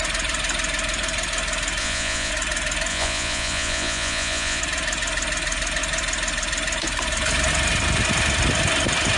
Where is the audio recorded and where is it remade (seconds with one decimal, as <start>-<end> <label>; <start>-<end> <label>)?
0.0-1.8 recorded; 1.8-2.3 remade; 2.3-2.9 recorded; 2.9-4.6 remade; 4.6-9.2 recorded